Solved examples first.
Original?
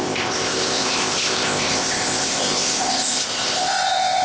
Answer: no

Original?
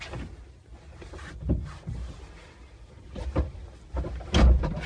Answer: yes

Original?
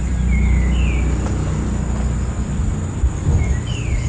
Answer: yes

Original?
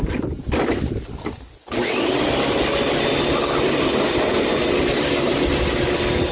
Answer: yes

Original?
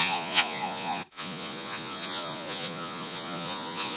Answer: no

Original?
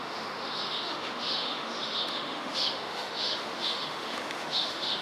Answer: no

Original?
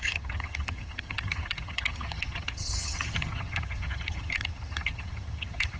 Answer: no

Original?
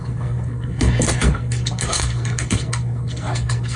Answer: no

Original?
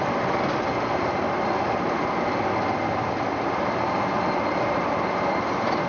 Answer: yes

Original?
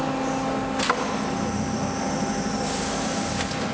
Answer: yes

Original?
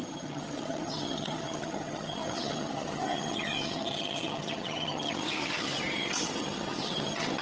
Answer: no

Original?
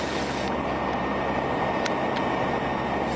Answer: yes